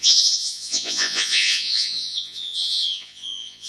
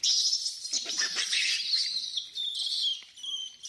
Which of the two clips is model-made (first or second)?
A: first